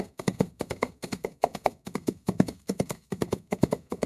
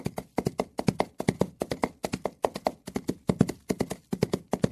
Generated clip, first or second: first